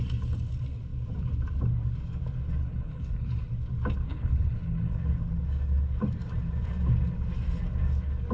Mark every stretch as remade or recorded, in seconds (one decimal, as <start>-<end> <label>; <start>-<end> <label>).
0.0-2.6 recorded; 2.6-3.5 remade; 3.5-4.1 recorded; 4.1-4.9 remade; 4.9-8.3 recorded